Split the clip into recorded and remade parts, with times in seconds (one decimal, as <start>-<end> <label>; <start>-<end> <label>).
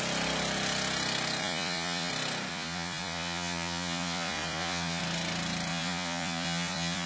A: 0.0-1.4 recorded; 1.4-2.1 remade; 2.1-2.5 recorded; 2.5-5.0 remade; 5.0-5.7 recorded; 5.7-7.1 remade